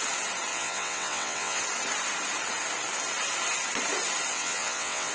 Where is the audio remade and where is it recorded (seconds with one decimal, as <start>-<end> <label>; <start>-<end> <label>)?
0.0-0.5 recorded; 0.5-1.6 remade; 1.6-4.3 recorded; 4.3-5.1 remade